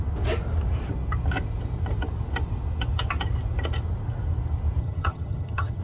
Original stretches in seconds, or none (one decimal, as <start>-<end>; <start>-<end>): 0.0-4.8